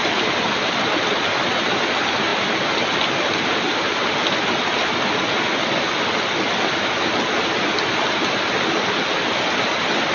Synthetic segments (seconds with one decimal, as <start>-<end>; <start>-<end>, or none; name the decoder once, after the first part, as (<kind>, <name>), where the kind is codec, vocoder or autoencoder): none